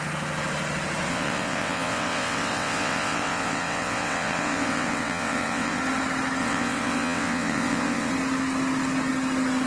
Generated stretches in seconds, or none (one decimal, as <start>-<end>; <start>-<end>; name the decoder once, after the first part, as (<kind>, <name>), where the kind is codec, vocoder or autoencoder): 1.1-5.8 (vocoder, WaveNeXt); 6.4-8.1